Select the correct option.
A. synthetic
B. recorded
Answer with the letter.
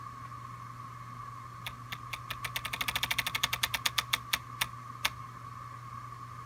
B